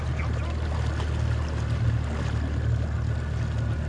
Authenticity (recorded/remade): recorded